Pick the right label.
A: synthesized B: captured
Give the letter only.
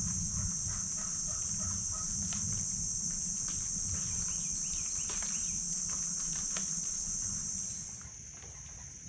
B